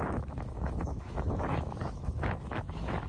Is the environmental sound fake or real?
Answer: fake